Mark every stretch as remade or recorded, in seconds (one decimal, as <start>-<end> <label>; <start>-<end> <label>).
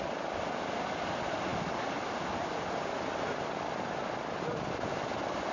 0.0-5.5 recorded